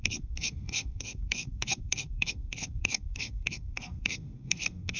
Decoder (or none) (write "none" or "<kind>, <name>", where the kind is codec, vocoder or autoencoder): codec, SNAC